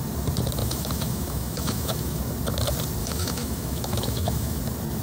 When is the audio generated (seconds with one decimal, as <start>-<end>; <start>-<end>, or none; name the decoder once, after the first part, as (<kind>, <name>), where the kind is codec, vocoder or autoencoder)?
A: 0.6-2.2 (autoencoder, DAC-VAE); 3.0-4.6